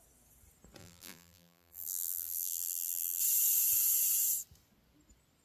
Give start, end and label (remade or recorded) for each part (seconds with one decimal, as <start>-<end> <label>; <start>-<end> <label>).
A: 0.0-0.8 recorded; 0.8-3.2 remade; 3.2-5.4 recorded